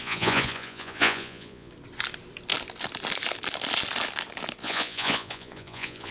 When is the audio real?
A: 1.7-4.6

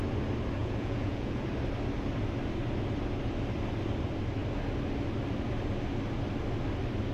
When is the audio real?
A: 0.0-0.6; 1.4-7.1

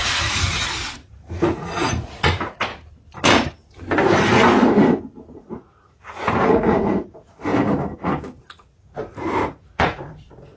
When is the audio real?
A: 2.7-5.4; 7.5-8.4

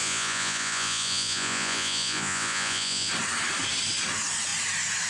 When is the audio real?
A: 3.1-5.1

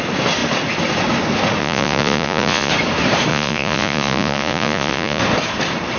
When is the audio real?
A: 0.0-1.6; 2.7-3.3; 5.2-6.0

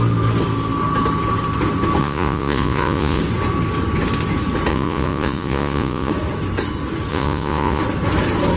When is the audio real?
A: 0.0-2.0; 3.2-4.7; 6.1-7.1; 7.8-8.6